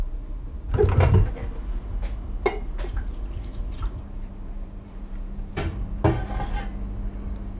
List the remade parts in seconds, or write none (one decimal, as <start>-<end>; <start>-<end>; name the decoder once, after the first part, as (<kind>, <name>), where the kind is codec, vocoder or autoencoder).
2.5-5.5 (vocoder, BigVGAN v2)